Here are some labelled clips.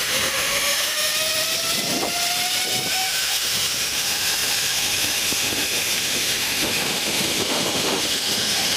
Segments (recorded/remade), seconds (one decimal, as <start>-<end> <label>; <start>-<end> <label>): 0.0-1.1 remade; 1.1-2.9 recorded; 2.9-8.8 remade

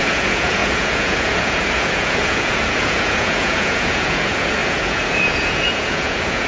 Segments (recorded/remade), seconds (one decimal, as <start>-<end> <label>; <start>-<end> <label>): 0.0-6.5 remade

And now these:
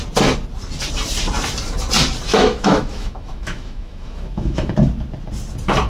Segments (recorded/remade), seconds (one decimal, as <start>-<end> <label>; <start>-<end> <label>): 0.0-2.3 recorded; 2.3-4.7 remade; 4.7-5.9 recorded

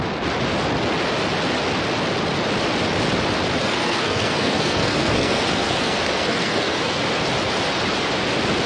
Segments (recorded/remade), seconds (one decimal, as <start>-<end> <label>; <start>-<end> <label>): 0.0-3.6 recorded; 3.6-7.0 remade; 7.0-8.7 recorded

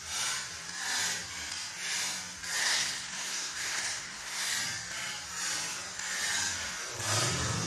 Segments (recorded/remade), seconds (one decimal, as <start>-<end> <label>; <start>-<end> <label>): 0.0-2.6 recorded; 2.6-4.5 remade; 4.5-7.7 recorded